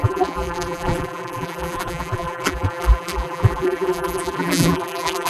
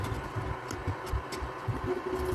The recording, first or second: second